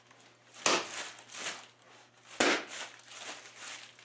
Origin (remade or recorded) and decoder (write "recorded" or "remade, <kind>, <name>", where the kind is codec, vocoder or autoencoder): recorded